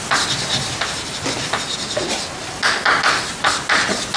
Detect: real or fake real